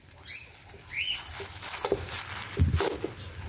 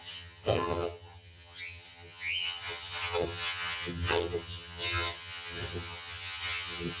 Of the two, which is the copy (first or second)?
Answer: second